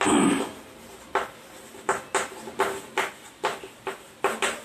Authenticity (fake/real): real